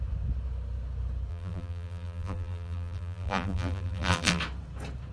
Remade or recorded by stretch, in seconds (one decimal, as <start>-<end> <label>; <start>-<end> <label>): 0.0-1.3 recorded; 1.3-4.4 remade; 4.4-5.1 recorded